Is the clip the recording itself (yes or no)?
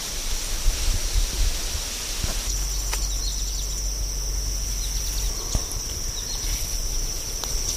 yes